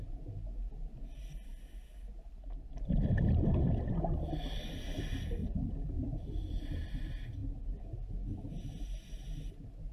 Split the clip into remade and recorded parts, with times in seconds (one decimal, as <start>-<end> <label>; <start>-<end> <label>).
0.0-5.4 recorded; 5.4-6.6 remade; 6.6-7.4 recorded; 7.4-7.9 remade; 7.9-9.9 recorded